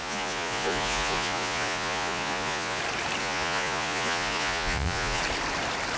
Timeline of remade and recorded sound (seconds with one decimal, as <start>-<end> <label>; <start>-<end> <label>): 0.0-2.8 remade; 2.8-3.2 recorded; 3.2-5.2 remade; 5.2-6.0 recorded